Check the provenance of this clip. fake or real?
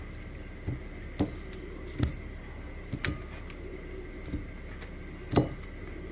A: real